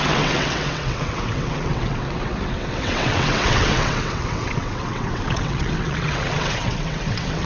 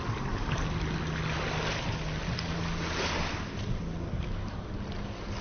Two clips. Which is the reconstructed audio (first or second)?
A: first